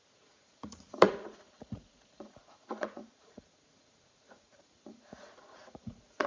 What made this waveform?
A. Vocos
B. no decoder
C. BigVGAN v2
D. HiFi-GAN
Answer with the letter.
A